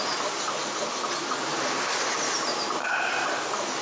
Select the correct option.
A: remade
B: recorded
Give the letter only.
B